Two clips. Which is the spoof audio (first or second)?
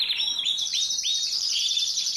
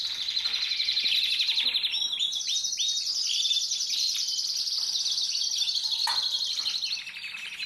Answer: first